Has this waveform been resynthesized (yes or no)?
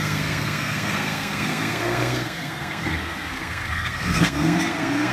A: yes